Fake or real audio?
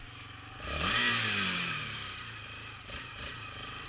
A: fake